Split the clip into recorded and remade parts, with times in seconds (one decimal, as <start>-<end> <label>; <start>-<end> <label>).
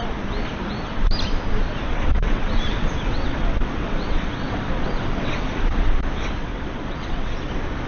0.0-1.9 recorded; 1.9-5.9 remade; 5.9-6.4 recorded; 6.4-7.5 remade; 7.5-7.9 recorded